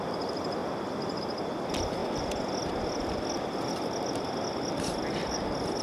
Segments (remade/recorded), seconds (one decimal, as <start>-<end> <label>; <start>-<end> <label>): 0.0-5.8 recorded